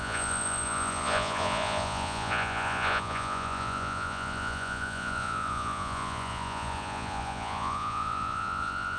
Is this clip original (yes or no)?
no